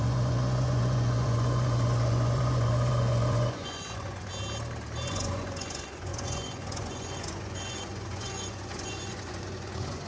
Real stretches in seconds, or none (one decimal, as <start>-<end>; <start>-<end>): 4.3-5.1